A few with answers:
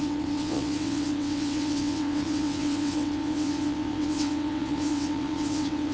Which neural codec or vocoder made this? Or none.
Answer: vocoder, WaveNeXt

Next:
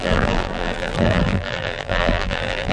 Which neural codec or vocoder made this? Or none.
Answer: vocoder, BigVGAN v2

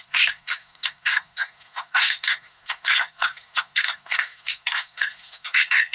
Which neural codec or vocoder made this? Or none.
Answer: codec, SNAC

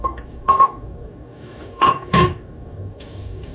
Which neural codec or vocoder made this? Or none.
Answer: codec, DAC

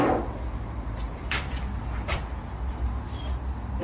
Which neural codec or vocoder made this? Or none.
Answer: none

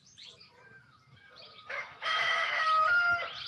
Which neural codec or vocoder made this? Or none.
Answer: vocoder, BigVGAN v2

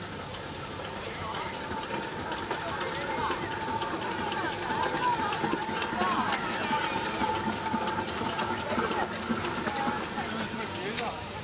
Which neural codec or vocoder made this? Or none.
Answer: none